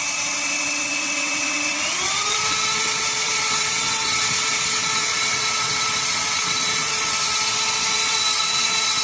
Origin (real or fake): fake